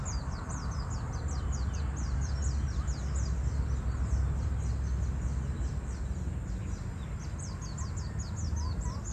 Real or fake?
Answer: real